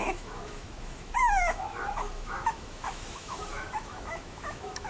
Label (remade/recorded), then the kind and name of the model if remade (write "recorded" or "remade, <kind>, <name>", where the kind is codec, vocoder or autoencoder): remade, autoencoder, DAC-VAE